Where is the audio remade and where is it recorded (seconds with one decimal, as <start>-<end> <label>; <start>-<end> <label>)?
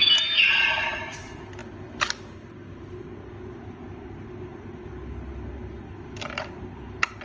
0.0-7.2 recorded